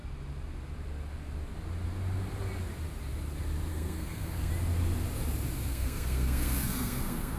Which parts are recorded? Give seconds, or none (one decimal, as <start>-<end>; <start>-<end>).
0.0-3.7; 4.5-5.7